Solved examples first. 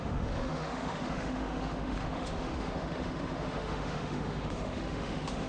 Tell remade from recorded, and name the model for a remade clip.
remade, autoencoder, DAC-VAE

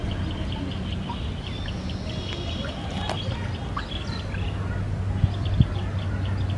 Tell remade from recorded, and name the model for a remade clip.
recorded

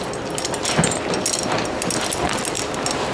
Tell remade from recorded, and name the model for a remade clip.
recorded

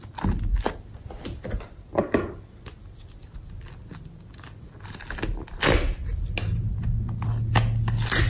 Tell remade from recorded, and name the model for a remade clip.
recorded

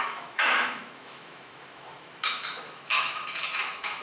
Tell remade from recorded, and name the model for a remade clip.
remade, autoencoder, DAC-VAE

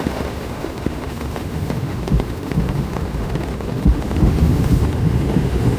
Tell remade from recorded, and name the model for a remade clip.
remade, autoencoder, DAC-VAE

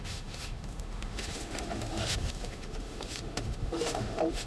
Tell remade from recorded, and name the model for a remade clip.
remade, autoencoder, DAC-VAE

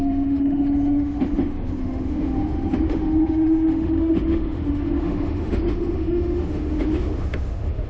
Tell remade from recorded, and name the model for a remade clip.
remade, autoencoder, DAC-VAE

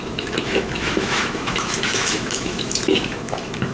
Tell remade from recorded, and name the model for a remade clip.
remade, autoencoder, DAC-VAE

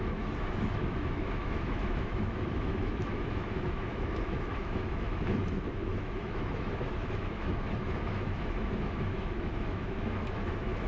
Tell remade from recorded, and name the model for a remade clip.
remade, autoencoder, DAC-VAE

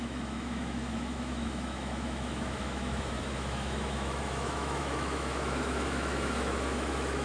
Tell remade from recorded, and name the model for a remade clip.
remade, autoencoder, DAC-VAE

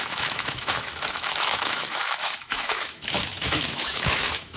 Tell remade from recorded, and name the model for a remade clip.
remade, autoencoder, DAC-VAE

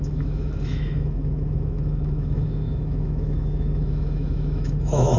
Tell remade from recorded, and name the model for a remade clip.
remade, autoencoder, DAC-VAE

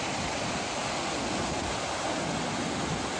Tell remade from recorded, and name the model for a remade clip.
recorded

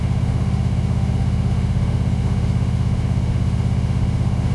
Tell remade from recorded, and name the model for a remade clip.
remade, autoencoder, DAC-VAE